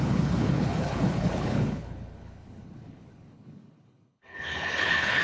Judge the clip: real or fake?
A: fake